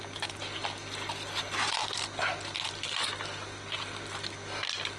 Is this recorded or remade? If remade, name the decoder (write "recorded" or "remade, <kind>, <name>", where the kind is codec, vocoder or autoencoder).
recorded